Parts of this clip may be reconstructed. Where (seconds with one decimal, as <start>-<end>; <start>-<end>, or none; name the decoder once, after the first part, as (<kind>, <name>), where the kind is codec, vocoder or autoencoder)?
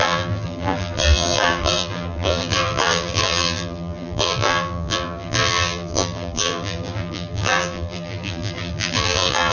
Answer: 0.0-9.5 (vocoder, BigVGAN v2)